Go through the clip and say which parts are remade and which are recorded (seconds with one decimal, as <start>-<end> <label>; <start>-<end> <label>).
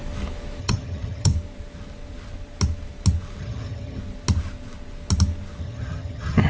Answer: 0.0-0.6 recorded; 0.6-1.3 remade; 1.3-3.4 recorded; 3.4-4.0 remade; 4.0-5.6 recorded; 5.6-6.5 remade